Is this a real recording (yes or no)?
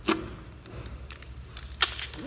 yes